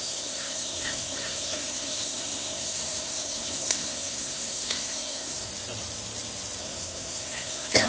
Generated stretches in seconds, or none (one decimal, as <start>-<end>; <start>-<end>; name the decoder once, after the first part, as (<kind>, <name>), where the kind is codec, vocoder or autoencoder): 0.0-5.5 (codec, SNAC); 6.6-7.9